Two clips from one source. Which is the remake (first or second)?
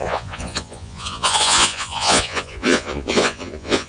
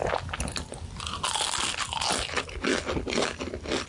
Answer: first